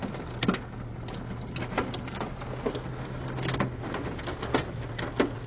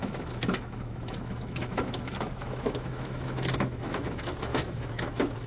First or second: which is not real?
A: second